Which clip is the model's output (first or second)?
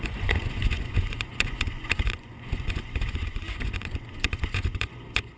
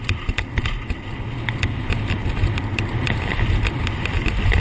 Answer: first